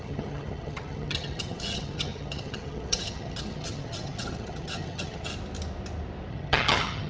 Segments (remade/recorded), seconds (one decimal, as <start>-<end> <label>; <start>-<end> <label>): 0.0-5.3 remade; 5.3-6.3 recorded; 6.3-7.1 remade